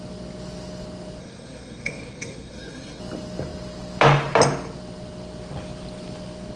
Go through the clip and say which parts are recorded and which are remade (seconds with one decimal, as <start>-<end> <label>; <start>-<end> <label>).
0.0-1.2 recorded; 1.2-3.0 remade; 3.0-6.6 recorded